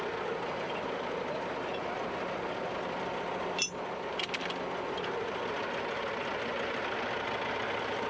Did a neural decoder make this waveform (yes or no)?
no